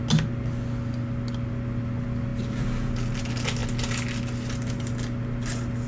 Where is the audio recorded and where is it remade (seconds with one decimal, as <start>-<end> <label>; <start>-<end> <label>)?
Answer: 0.0-5.9 recorded